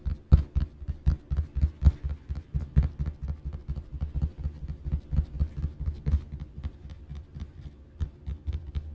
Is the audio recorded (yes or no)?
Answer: yes